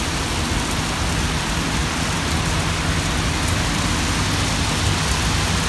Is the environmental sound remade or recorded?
recorded